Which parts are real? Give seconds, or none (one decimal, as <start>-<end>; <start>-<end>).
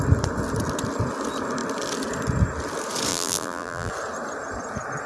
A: 0.0-3.1; 3.9-5.1